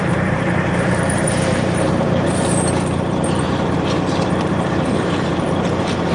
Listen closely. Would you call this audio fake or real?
fake